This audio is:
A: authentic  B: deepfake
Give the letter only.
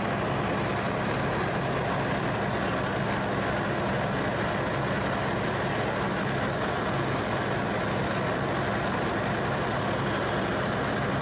A